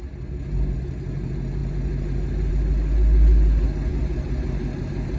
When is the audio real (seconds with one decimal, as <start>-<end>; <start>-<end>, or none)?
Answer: 0.0-5.2